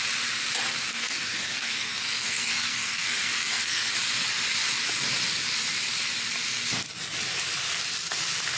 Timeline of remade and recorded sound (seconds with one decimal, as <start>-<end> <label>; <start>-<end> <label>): 0.0-0.8 recorded; 0.8-3.9 remade; 3.9-8.6 recorded